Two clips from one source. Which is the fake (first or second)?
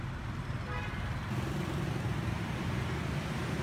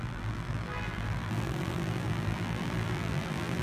second